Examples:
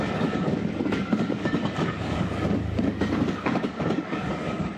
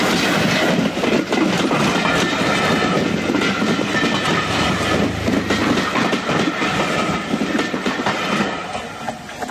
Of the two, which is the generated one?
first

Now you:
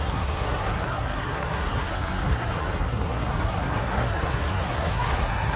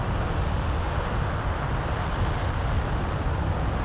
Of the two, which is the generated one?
first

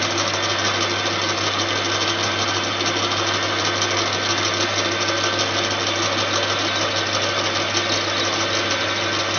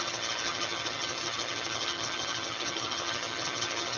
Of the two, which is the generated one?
second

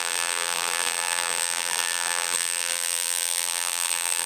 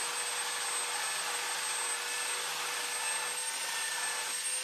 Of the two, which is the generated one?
first